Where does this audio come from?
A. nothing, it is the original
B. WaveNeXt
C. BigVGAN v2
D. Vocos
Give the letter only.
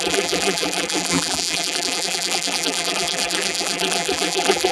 C